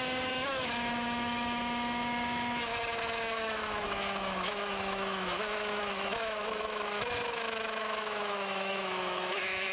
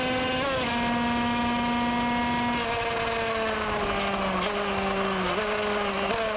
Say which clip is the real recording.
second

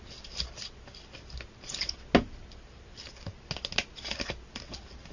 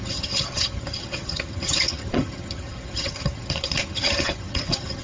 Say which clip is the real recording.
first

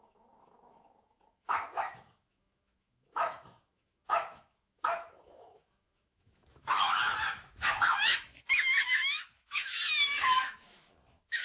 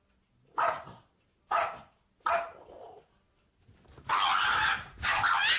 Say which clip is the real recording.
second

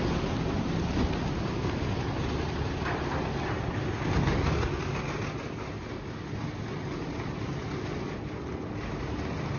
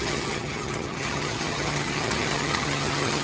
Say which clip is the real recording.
first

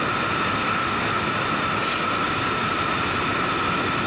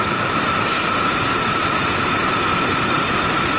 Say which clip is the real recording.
first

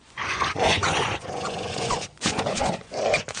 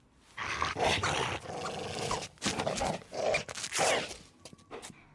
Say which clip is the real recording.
second